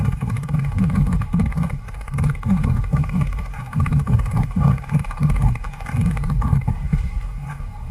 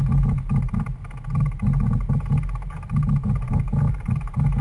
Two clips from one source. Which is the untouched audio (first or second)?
second